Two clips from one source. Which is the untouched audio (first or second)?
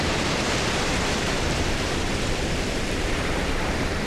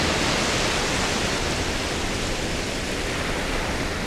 second